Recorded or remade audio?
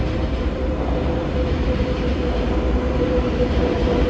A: recorded